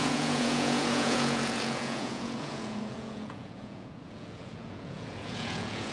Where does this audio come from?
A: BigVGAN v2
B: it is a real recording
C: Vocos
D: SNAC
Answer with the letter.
C